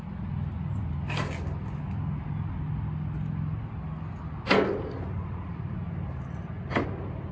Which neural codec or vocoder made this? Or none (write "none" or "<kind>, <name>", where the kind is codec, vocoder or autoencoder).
none